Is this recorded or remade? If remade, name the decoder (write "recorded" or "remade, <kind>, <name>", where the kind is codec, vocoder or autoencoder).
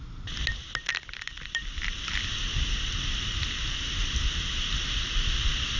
recorded